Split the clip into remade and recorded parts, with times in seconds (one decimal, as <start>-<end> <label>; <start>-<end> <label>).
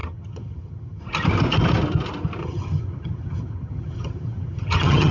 0.0-1.0 remade; 1.0-2.4 recorded; 2.4-5.1 remade